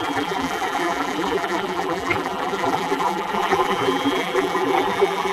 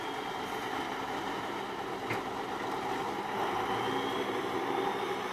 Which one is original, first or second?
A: second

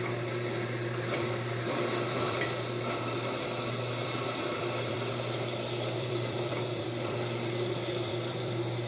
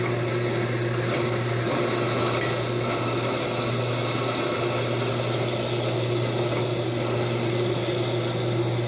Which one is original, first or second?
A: second